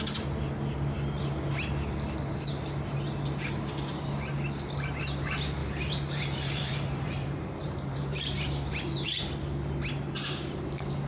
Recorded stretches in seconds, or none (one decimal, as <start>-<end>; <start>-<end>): 0.0-5.6; 9.3-11.1